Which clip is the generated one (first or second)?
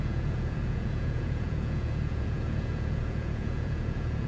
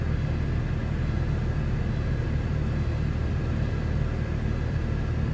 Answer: first